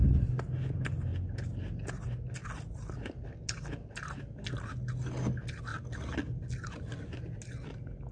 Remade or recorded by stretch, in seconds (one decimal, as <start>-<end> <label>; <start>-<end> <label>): 0.0-8.1 recorded